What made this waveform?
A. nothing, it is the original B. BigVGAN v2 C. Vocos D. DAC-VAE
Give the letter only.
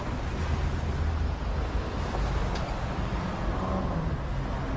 A